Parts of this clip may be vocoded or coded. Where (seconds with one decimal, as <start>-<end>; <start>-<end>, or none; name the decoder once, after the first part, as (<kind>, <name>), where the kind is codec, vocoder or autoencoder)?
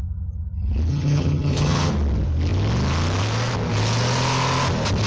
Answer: 0.9-1.9 (vocoder, HiFi-GAN)